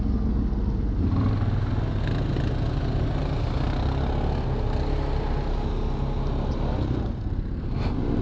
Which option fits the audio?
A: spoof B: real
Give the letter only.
B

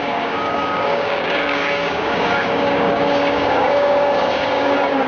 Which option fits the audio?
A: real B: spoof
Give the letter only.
B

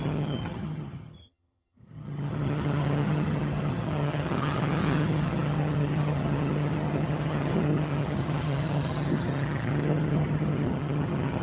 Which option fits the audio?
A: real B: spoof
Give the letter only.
B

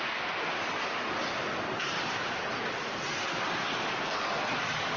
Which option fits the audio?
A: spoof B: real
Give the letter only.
B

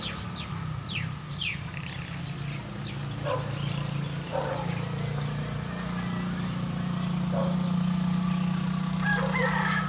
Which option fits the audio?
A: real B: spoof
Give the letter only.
A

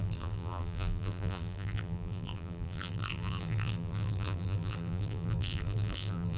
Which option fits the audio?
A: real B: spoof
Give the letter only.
B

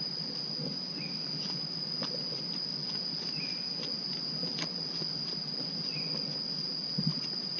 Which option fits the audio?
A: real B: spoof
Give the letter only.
A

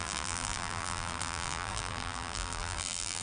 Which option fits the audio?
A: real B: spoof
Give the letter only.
B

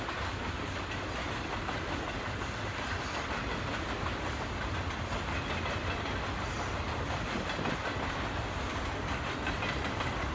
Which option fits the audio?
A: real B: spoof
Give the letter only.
A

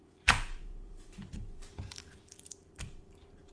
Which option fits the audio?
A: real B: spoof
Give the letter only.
B